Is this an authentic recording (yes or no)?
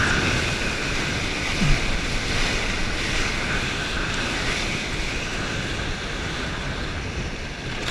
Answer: yes